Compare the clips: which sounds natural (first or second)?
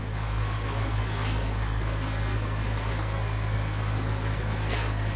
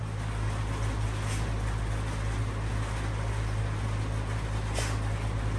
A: second